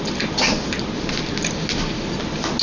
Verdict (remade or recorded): recorded